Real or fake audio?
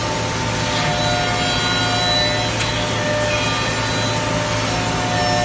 real